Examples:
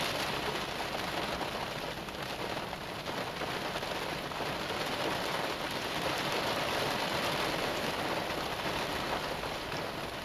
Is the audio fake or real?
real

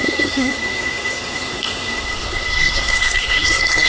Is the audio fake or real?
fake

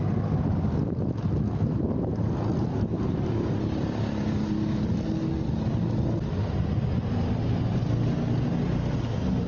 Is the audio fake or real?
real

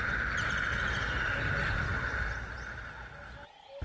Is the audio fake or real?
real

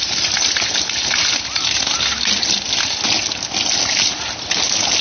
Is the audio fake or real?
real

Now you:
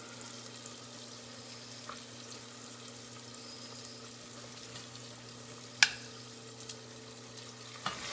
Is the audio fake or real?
real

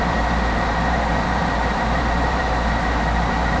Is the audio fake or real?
fake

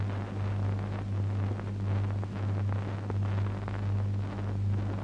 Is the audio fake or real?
real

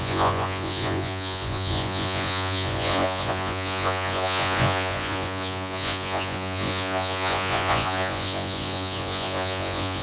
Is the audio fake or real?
fake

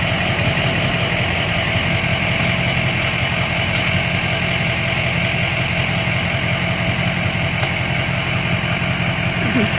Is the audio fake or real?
real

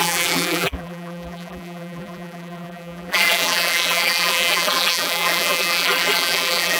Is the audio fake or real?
fake